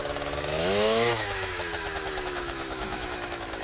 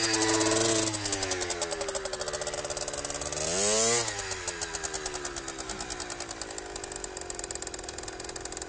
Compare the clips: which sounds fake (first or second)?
first